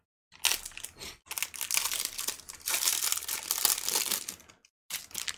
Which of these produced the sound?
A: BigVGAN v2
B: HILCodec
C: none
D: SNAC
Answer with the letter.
C